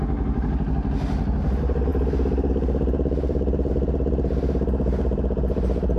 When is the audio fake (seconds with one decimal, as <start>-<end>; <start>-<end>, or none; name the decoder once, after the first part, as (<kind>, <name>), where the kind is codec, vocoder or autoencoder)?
none